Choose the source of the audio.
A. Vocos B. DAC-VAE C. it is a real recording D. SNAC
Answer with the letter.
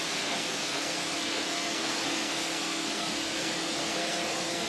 D